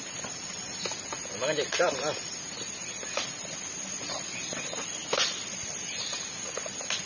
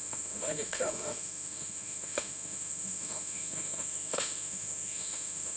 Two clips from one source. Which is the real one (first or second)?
first